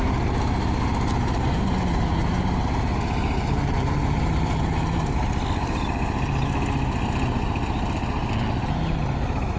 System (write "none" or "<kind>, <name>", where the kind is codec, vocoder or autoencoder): none